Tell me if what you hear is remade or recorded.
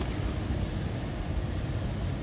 recorded